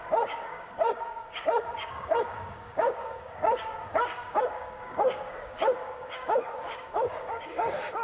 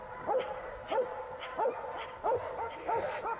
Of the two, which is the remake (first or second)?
first